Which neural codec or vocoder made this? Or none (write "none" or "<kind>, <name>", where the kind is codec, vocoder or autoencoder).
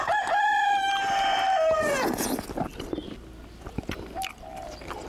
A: none